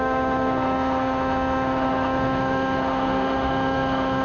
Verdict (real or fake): fake